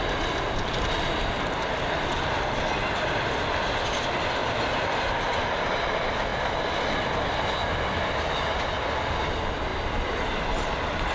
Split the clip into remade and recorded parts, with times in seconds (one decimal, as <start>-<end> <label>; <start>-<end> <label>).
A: 0.0-11.1 recorded